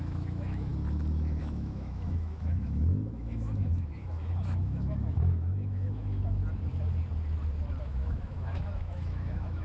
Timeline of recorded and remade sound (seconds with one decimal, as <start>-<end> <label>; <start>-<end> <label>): 0.0-0.7 remade; 0.7-1.4 recorded; 1.4-6.4 remade; 6.4-7.8 recorded; 7.8-9.6 remade